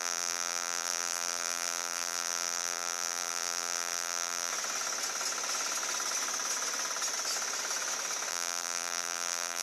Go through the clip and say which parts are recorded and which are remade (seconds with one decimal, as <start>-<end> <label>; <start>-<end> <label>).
0.0-4.5 remade; 4.5-8.3 recorded; 8.3-9.6 remade